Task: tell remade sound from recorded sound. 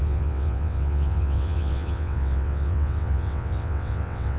remade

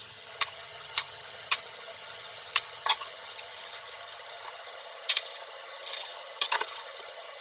remade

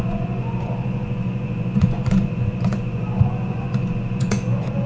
remade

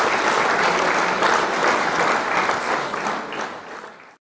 recorded